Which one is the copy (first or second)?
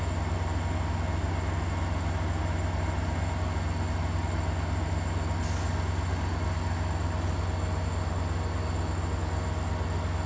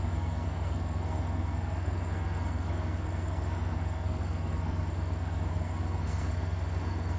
second